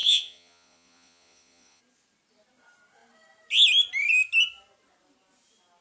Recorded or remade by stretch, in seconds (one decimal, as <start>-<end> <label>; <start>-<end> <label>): 0.0-1.8 remade; 1.8-5.8 recorded